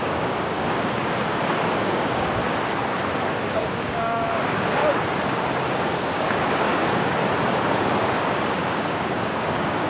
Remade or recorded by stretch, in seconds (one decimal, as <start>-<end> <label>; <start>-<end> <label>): 0.0-2.4 remade; 2.4-3.4 recorded; 3.4-4.8 remade; 4.8-5.7 recorded; 5.7-6.8 remade; 6.8-7.6 recorded; 7.6-9.9 remade